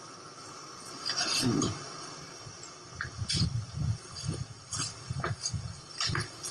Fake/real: real